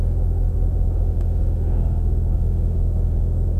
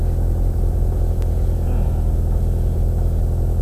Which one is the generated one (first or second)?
first